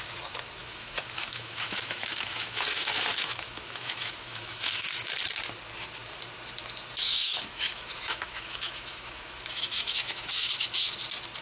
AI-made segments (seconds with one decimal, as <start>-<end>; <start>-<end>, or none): 0.6-5.2; 7.0-10.5